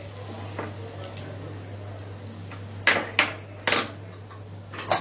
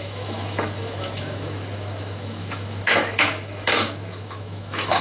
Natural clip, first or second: first